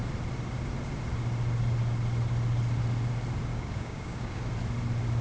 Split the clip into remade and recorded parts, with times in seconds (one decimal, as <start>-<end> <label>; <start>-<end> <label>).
0.0-3.5 recorded; 3.5-4.5 remade; 4.5-5.2 recorded